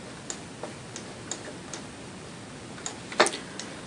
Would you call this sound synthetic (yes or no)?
no